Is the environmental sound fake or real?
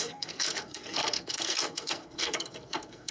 fake